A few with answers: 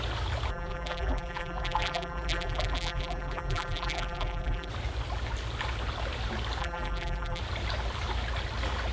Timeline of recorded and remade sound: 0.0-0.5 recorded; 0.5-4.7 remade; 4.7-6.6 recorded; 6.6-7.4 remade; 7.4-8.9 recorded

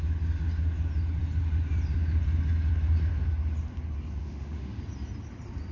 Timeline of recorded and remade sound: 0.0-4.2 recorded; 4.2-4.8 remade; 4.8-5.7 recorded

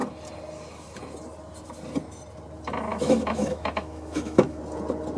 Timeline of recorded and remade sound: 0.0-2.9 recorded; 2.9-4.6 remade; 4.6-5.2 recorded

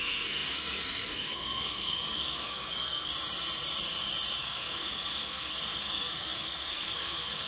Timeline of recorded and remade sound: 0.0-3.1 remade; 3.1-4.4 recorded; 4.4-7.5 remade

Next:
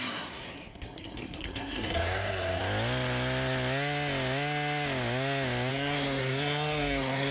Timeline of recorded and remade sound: 0.0-2.6 remade; 2.6-5.7 recorded; 5.7-7.3 remade